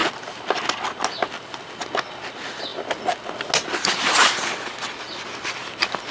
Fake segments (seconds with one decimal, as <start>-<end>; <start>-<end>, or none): none

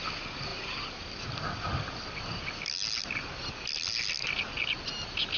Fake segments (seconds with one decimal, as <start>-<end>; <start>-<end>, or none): none

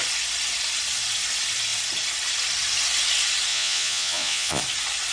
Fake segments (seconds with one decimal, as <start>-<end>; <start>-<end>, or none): 3.5-4.6

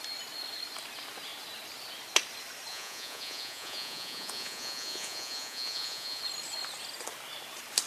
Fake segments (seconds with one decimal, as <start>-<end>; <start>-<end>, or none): 2.7-6.2